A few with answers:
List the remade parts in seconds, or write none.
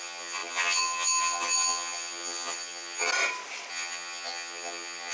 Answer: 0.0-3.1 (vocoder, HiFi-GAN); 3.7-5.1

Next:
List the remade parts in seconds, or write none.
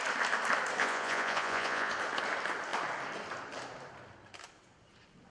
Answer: 0.8-1.9 (vocoder, Vocos)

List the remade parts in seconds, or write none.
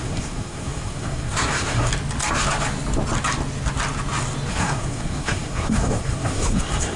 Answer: 0.0-1.9 (codec, SNAC); 4.5-7.0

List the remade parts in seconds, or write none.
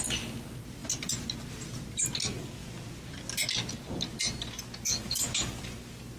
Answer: none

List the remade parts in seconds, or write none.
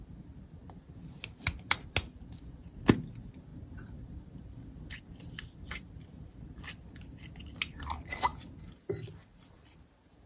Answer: none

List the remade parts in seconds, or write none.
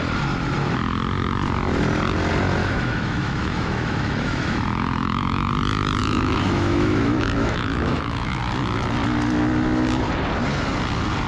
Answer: 2.6-5.5 (autoencoder, DAC-VAE); 6.0-8.4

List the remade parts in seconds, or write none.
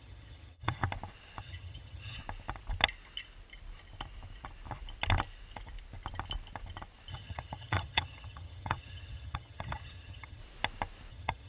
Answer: 0.0-0.8 (vocoder, HiFi-GAN); 1.4-2.2; 7.1-10.4; 11.1-11.5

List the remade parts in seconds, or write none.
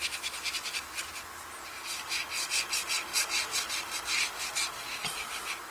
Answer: none